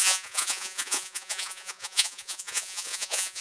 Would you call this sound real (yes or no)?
no